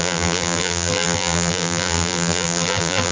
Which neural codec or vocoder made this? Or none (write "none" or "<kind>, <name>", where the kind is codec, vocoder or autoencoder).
vocoder, BigVGAN v2